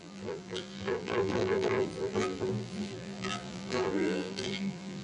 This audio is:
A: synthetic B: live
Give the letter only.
A